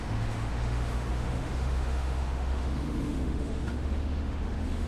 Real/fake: fake